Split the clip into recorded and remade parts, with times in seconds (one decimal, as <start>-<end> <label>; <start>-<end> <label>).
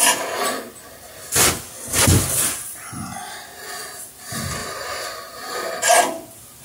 0.0-4.6 recorded; 4.6-5.7 remade; 5.7-6.6 recorded